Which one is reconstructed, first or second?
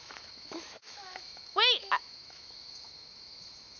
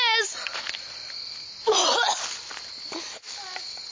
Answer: first